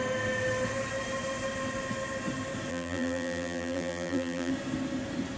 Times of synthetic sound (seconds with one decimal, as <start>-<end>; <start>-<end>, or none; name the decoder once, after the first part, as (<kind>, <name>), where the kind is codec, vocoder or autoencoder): 2.7-4.5 (vocoder, BigVGAN v2)